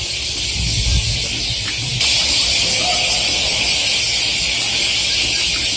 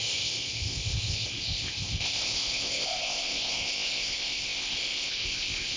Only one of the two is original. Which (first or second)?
first